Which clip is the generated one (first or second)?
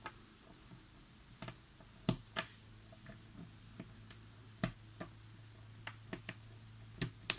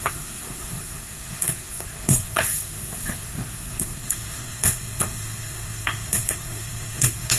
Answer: second